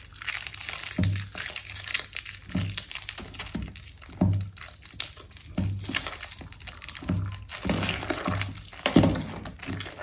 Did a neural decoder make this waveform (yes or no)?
no